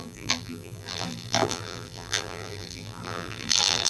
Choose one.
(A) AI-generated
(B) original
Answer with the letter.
A